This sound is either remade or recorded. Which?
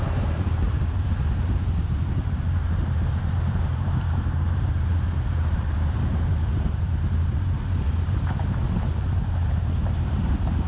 remade